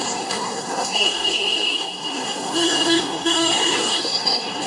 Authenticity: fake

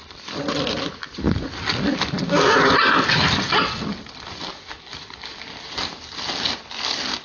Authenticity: fake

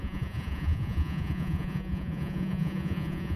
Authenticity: fake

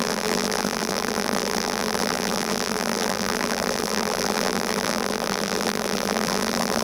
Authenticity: fake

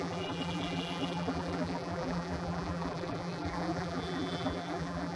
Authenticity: fake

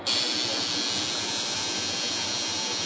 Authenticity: real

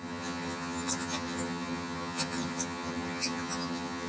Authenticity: fake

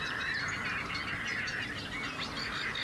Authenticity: real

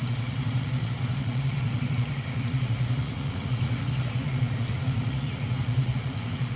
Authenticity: fake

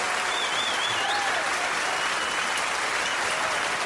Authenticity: real